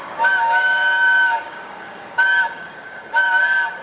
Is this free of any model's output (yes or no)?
no